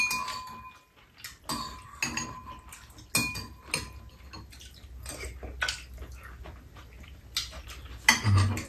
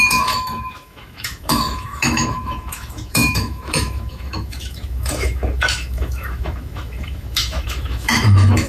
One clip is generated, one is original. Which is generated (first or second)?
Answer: second